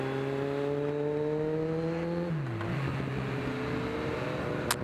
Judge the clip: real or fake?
real